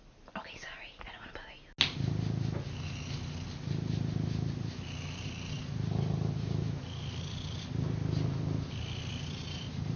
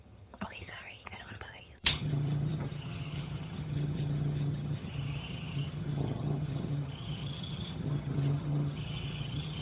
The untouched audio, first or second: first